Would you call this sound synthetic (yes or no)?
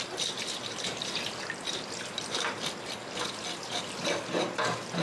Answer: no